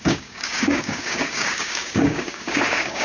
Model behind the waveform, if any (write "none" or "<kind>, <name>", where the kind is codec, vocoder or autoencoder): codec, DAC